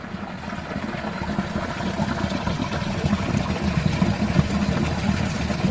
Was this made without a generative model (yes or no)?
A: yes